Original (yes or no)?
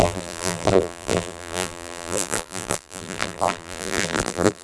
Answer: no